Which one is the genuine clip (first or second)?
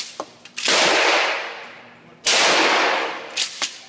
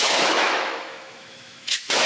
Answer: first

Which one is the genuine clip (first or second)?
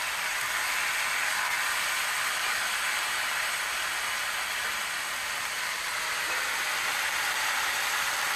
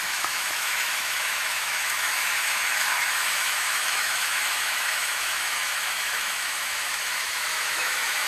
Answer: first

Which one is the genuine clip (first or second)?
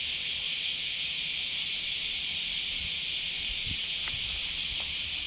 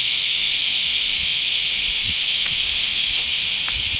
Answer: first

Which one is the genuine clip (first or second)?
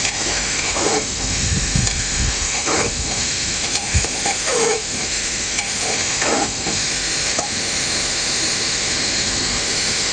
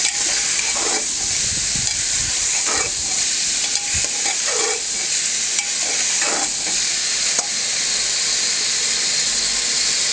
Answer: second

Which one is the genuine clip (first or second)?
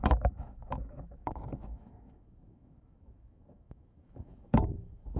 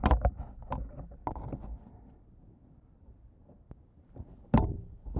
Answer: second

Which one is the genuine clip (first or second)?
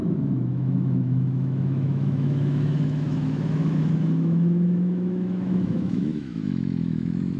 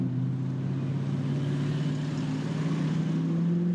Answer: second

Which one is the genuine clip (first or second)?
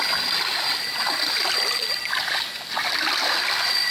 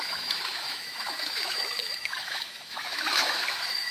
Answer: first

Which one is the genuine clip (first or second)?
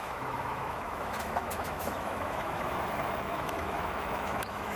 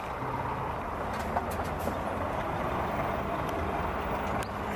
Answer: second